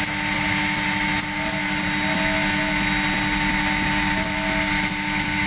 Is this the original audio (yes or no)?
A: yes